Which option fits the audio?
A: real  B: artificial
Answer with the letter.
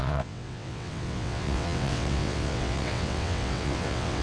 B